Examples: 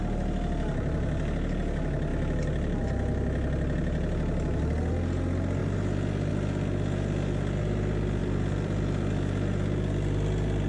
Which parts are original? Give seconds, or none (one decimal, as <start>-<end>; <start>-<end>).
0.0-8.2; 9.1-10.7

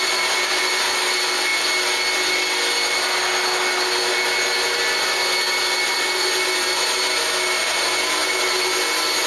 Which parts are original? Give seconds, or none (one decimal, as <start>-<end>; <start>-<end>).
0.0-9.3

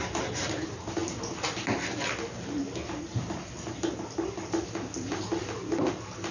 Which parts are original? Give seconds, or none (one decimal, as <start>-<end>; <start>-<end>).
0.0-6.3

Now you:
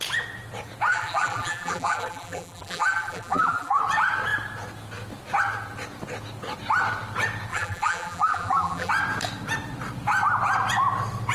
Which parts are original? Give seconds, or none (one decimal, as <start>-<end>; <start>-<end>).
0.0-0.9; 3.8-7.5; 8.9-11.3

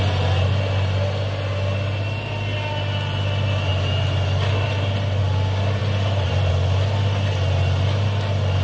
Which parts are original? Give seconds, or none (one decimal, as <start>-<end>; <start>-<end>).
0.0-5.8; 6.5-8.6

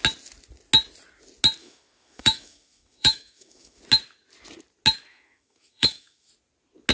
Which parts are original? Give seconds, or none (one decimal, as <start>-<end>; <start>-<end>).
0.0-1.6; 3.8-5.1; 6.3-6.9

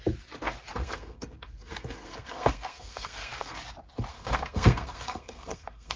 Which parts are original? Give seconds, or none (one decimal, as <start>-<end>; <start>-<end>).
0.0-0.7; 3.6-4.1